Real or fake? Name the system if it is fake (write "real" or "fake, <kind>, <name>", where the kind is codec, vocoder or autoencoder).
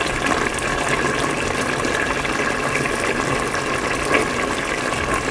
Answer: real